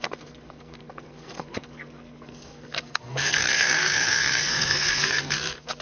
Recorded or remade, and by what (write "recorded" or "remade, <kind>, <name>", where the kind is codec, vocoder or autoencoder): remade, codec, SNAC